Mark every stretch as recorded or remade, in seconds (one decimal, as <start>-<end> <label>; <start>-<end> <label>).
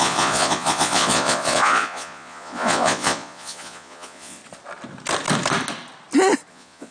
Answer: 0.0-4.4 remade; 4.4-6.5 recorded; 6.5-6.9 remade